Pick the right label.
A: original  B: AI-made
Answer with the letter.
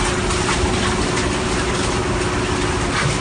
A